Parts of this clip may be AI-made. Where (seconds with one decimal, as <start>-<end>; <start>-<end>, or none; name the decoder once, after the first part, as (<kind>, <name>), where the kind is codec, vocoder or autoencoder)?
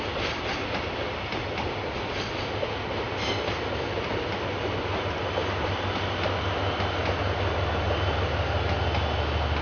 none